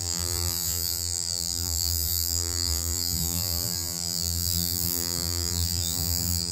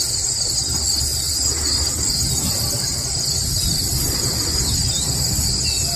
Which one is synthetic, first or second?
first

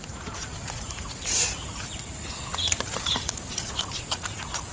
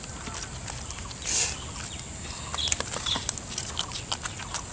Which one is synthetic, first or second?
first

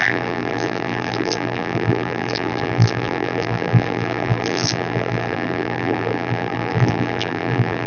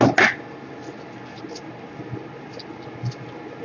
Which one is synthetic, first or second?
first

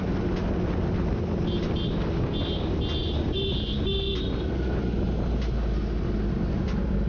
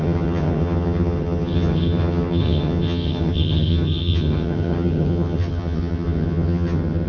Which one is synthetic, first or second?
second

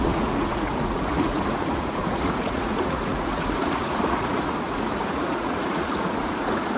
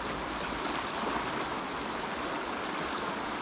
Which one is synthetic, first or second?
first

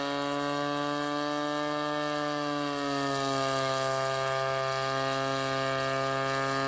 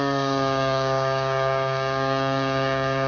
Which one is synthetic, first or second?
second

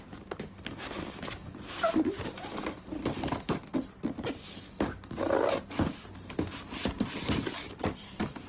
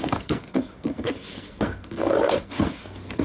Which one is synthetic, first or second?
second